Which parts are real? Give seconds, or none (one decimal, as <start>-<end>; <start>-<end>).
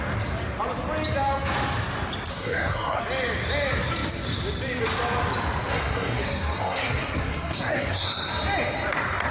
0.0-2.3; 3.0-5.7; 8.3-9.3